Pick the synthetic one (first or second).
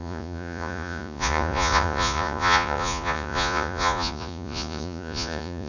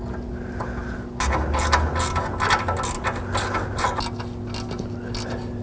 first